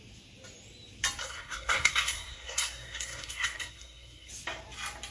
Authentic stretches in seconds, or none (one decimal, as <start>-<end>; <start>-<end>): 0.0-1.2; 4.3-5.1